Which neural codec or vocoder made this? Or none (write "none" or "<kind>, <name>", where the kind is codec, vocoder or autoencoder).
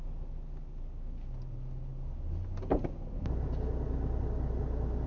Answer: none